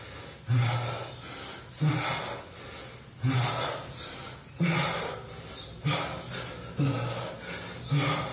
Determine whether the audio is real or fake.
real